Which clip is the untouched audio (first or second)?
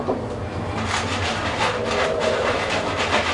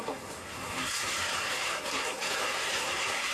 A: first